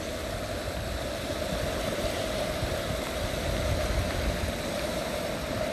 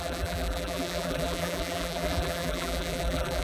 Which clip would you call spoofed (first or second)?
second